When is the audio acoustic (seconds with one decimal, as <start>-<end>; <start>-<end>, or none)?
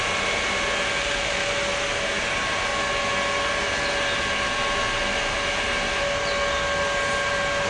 0.0-1.0; 1.5-7.7